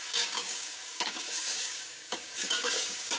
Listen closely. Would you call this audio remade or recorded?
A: remade